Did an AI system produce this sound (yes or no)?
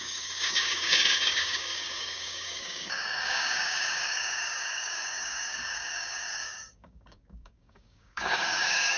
yes